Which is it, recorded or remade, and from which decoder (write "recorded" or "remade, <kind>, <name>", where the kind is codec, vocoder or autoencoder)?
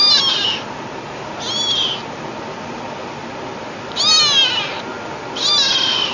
recorded